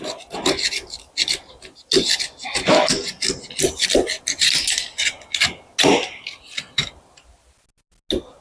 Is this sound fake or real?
real